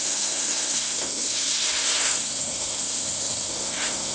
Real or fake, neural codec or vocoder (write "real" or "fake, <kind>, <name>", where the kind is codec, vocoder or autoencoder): fake, codec, SNAC